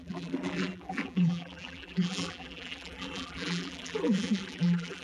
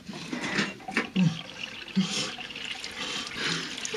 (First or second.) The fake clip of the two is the first